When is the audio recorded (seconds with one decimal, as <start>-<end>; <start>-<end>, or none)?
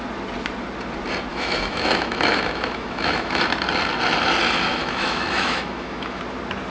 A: 0.0-1.3; 3.4-4.7; 6.2-6.7